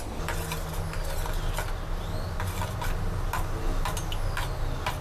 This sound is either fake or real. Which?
real